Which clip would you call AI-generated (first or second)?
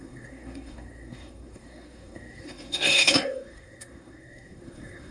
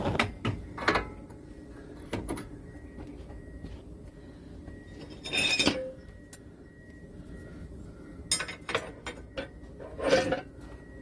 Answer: first